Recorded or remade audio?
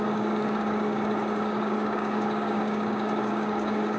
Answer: remade